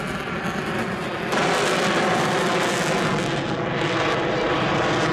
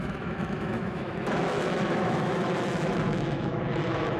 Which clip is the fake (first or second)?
second